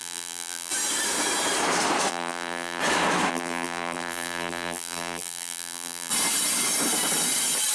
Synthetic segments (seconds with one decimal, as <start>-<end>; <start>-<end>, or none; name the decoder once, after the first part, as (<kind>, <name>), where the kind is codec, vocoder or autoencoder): 0.0-0.7 (vocoder, BigVGAN v2); 2.1-2.8; 3.3-6.1